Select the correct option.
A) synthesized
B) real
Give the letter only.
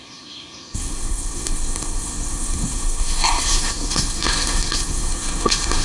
A